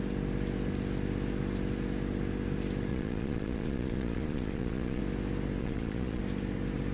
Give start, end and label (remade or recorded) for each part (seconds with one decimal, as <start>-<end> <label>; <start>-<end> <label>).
0.0-2.9 recorded; 2.9-5.0 remade; 5.0-5.6 recorded; 5.6-6.2 remade; 6.2-6.9 recorded